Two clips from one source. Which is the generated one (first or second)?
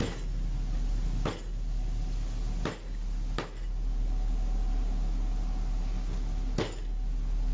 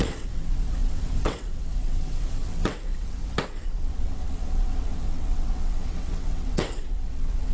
second